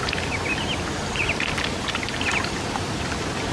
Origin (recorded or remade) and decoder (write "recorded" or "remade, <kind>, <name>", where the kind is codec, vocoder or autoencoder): recorded